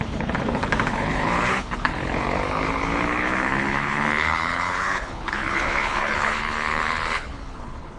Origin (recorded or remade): remade